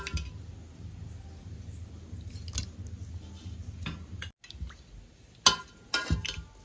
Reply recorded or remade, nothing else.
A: recorded